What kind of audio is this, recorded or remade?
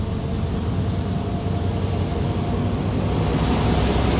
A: recorded